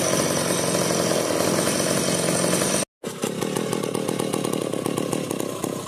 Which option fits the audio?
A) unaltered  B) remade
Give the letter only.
A